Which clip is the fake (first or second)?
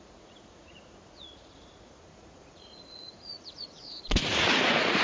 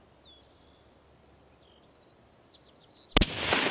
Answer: first